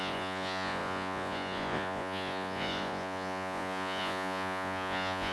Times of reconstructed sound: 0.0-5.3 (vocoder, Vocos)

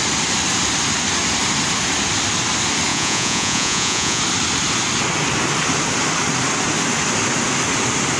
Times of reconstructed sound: 2.9-4.2 (vocoder, Vocos)

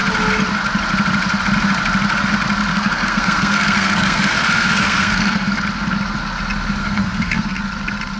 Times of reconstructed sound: 2.7-5.6 (codec, SNAC); 6.8-7.6